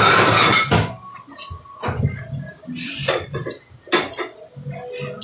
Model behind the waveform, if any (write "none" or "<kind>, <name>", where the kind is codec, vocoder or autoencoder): none